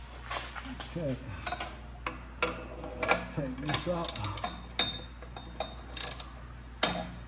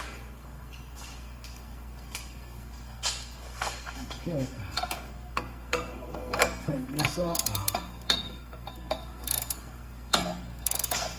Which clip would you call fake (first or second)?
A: second